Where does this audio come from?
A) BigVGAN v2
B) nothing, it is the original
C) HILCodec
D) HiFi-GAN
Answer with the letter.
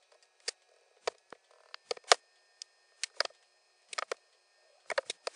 B